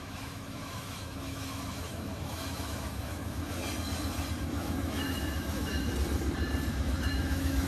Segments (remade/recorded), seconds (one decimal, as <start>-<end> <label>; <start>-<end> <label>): 0.0-3.6 remade; 3.6-4.4 recorded; 4.4-5.9 remade; 5.9-6.7 recorded; 6.7-7.7 remade